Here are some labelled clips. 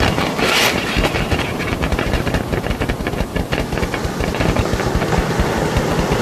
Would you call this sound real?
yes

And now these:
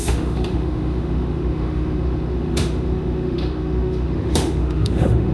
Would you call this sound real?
no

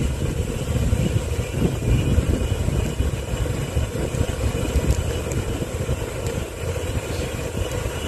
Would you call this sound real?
yes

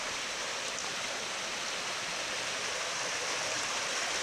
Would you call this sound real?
yes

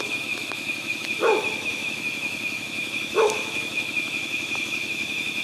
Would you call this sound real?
no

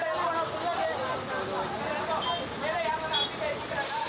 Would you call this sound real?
yes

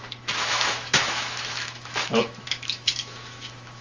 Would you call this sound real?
no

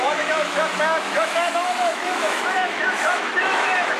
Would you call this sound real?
no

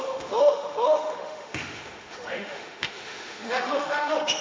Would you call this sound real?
no